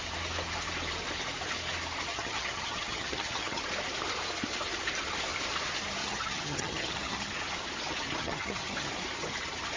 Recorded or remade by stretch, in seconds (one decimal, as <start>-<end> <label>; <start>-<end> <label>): 0.0-2.1 recorded; 2.1-3.6 remade; 3.6-6.0 recorded; 6.0-7.3 remade; 7.3-8.2 recorded; 8.2-8.9 remade; 8.9-9.8 recorded